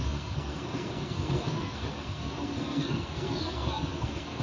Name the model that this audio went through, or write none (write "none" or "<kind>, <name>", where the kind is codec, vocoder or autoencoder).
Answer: codec, SNAC